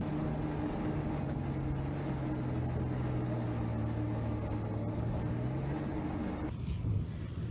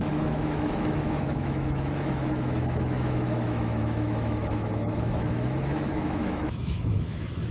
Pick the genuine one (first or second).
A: first